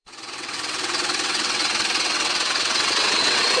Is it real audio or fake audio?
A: fake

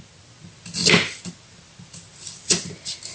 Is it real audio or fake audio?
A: real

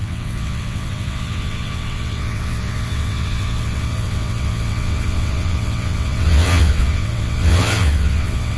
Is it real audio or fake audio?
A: fake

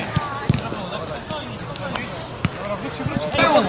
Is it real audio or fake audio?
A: real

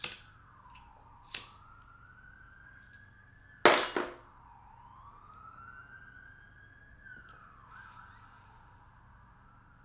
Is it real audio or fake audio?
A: real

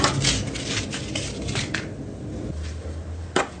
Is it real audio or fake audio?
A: real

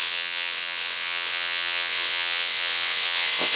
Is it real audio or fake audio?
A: fake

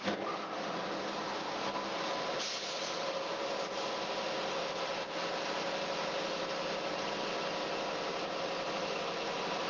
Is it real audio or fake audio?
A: real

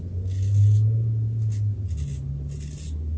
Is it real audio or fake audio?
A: real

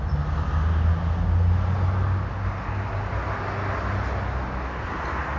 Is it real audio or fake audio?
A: real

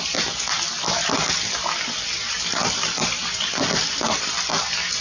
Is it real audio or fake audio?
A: real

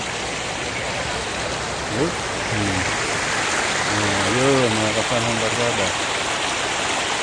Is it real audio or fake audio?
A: real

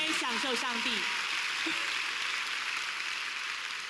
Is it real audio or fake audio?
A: real